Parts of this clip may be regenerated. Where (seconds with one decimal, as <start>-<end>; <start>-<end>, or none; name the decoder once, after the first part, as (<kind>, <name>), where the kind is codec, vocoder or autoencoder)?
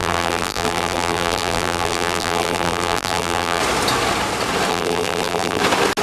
0.0-3.6 (vocoder, BigVGAN v2); 4.7-5.6